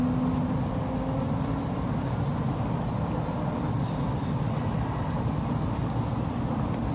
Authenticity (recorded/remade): recorded